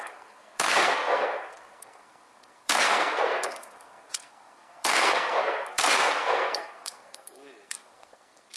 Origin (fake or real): fake